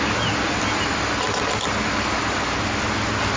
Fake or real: real